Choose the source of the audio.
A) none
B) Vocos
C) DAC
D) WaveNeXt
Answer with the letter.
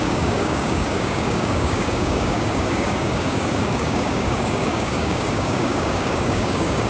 C